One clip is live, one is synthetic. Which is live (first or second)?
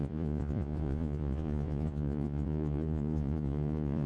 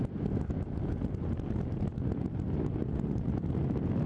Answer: second